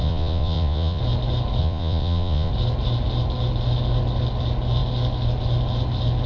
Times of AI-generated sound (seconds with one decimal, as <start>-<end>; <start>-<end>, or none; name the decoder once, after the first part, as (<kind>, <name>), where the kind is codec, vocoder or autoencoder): 0.0-1.0 (vocoder, Vocos); 1.6-2.5